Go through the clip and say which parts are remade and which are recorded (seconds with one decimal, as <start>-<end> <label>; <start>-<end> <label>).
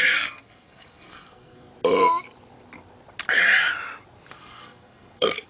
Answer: 0.0-1.7 remade; 1.7-4.3 recorded; 4.3-5.5 remade